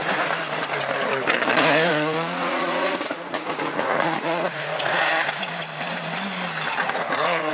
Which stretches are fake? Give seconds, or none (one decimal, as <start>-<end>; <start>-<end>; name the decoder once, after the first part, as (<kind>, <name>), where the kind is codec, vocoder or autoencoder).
1.9-5.1 (vocoder, Vocos); 6.8-7.5